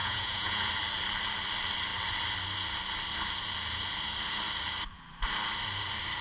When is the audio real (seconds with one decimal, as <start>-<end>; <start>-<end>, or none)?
0.7-6.2